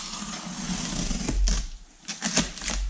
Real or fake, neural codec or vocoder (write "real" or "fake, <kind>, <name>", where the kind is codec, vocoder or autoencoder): real